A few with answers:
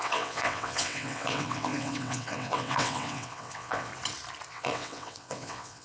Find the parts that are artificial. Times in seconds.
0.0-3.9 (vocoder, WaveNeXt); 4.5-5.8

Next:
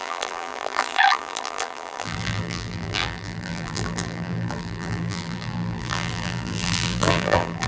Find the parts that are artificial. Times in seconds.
0.0-7.7 (vocoder, BigVGAN v2)

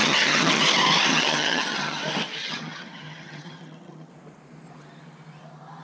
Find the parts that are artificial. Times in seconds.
0.0-0.6 (vocoder, HiFi-GAN); 1.1-2.0; 2.4-4.1

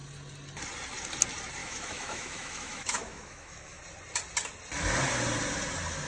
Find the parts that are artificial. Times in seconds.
1.6-3.8 (autoencoder, DAC-VAE)

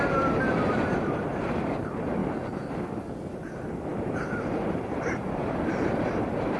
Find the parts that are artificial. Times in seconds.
0.0-2.2 (vocoder, BigVGAN v2); 3.4-6.6